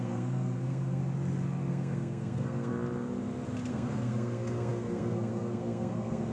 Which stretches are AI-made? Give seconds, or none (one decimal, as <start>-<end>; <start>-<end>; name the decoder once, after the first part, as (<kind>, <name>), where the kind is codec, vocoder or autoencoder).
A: 0.0-1.0 (codec, SNAC); 1.7-2.7; 3.7-6.3